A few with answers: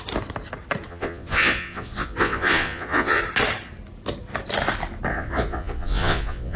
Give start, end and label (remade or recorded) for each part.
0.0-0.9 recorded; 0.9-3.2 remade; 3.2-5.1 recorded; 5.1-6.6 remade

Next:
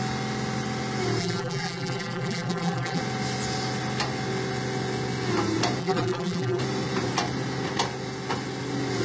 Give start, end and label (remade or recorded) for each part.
0.0-1.2 recorded; 1.2-3.0 remade; 3.0-5.8 recorded; 5.8-6.6 remade; 6.6-9.0 recorded

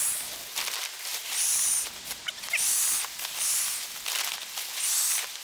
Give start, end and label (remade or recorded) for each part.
0.0-5.4 recorded

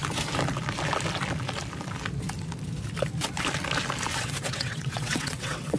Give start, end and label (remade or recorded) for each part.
0.0-4.1 recorded; 4.1-5.8 remade

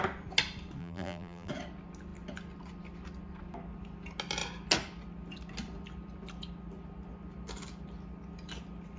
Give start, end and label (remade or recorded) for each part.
0.0-0.8 recorded; 0.8-1.5 remade; 1.5-9.0 recorded

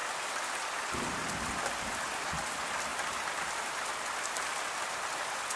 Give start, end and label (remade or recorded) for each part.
0.0-5.6 recorded

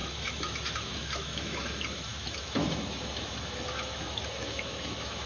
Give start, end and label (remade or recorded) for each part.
0.0-1.7 remade; 1.7-2.1 recorded; 2.1-5.3 remade